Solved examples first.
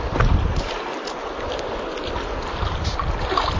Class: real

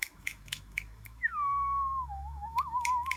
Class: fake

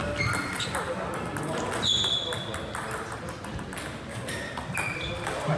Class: real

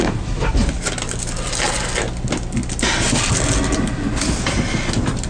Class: real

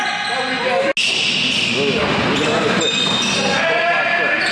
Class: real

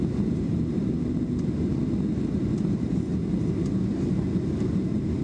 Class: real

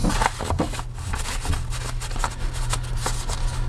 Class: real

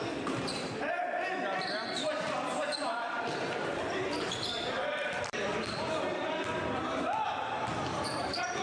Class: fake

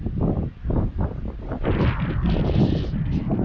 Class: real